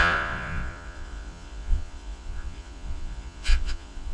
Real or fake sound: fake